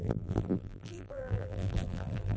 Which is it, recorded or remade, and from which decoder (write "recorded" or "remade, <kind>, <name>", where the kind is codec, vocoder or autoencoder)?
remade, vocoder, BigVGAN v2